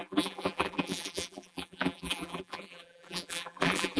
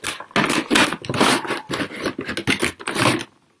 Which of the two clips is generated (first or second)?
first